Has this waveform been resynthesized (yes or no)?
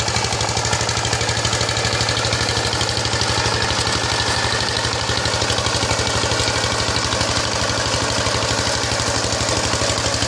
no